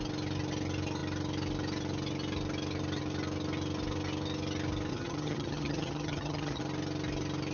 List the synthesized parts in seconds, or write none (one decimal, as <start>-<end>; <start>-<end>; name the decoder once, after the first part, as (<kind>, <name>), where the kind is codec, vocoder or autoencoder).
4.9-6.6 (vocoder, HiFi-GAN)